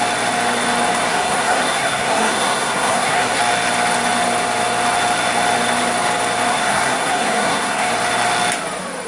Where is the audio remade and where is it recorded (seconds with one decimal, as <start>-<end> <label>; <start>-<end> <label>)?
0.0-1.1 recorded; 1.1-3.4 remade; 3.4-6.5 recorded; 6.5-7.9 remade; 7.9-9.1 recorded